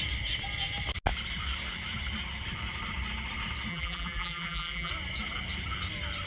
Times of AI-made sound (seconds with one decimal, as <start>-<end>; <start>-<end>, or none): 3.7-4.9